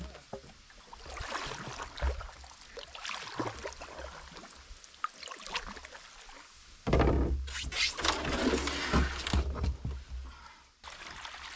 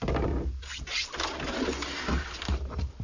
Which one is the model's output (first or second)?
second